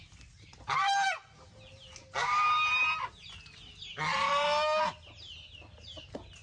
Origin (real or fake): real